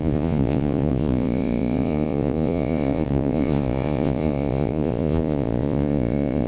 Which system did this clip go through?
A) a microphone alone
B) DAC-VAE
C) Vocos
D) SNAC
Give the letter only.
C